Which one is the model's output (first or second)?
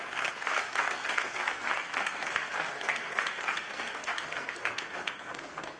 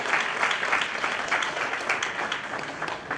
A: first